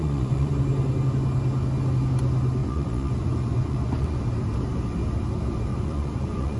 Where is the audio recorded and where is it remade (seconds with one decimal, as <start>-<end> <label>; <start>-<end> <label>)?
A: 0.0-0.5 remade; 0.5-2.6 recorded; 2.6-4.2 remade; 4.2-5.7 recorded; 5.7-6.6 remade